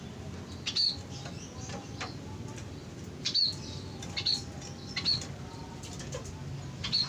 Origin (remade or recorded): recorded